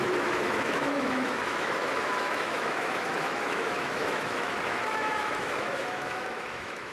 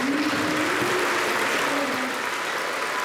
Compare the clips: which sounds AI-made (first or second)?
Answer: first